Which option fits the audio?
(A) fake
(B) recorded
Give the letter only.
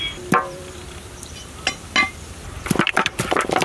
A